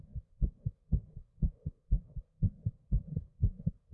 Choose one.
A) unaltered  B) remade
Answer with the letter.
B